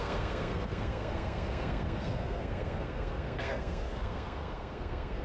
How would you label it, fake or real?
fake